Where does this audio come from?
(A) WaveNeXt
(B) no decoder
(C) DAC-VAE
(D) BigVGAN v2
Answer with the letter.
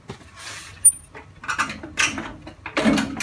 B